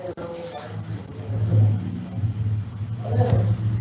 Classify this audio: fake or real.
real